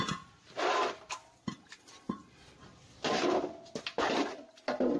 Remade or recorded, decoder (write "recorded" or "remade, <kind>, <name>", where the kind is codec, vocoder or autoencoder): recorded